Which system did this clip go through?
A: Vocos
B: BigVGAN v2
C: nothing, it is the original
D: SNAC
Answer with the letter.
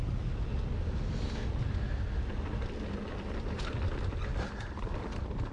C